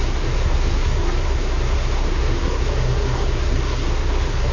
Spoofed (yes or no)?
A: yes